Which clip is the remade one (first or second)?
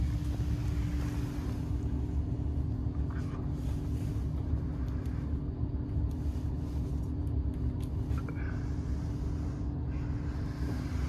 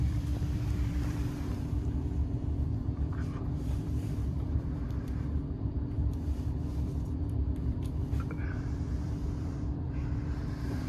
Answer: second